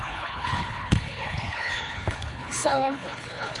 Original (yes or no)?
no